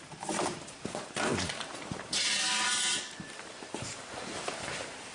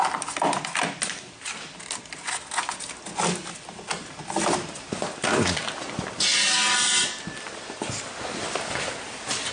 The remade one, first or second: first